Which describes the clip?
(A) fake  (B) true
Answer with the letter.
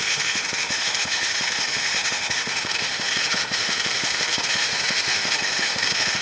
A